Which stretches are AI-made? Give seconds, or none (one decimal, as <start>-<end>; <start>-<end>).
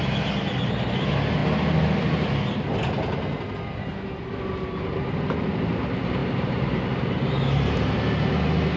6.2-8.3